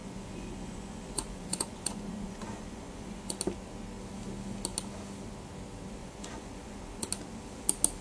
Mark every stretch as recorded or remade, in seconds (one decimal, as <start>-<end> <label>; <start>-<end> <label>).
0.0-3.4 remade; 3.4-6.0 recorded; 6.0-7.1 remade; 7.1-8.0 recorded